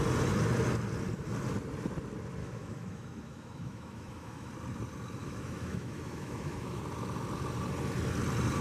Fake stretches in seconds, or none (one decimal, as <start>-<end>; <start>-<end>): 2.4-4.5; 5.2-6.8